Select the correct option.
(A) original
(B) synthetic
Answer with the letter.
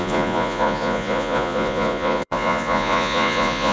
B